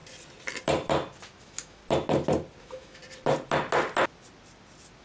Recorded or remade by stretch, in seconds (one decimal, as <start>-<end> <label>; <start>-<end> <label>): 0.0-1.4 recorded; 1.4-1.8 remade; 1.8-2.6 recorded; 2.6-3.0 remade; 3.0-5.0 recorded